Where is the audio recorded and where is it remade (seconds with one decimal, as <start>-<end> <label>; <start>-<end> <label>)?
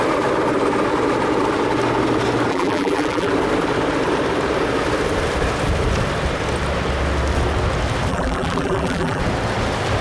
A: 0.0-2.5 recorded; 2.5-3.3 remade; 3.3-8.1 recorded; 8.1-9.2 remade; 9.2-10.0 recorded